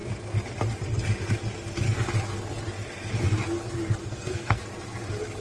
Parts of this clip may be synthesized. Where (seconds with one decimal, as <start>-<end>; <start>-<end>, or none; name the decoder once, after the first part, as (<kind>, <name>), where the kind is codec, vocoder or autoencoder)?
4.0-4.6 (codec, SNAC)